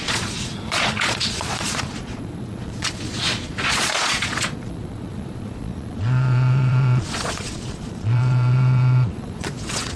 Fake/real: fake